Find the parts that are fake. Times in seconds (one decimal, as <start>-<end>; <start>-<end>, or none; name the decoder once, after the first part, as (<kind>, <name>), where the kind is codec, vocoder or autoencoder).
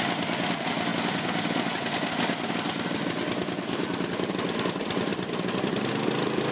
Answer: 5.1-5.9 (vocoder, BigVGAN v2)